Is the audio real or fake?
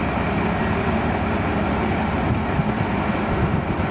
fake